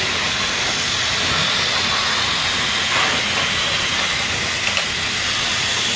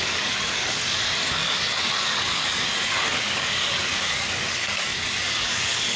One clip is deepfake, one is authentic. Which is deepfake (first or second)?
second